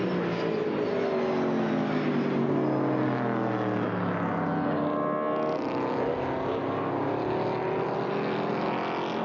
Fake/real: real